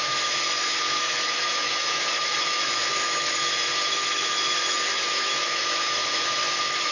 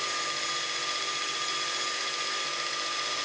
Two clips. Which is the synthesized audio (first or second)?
first